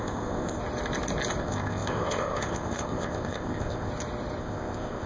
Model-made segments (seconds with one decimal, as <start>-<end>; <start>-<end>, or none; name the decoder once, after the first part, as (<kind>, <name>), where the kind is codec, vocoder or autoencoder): 0.0-0.6 (codec, ZipCodec); 1.4-3.9; 4.4-5.1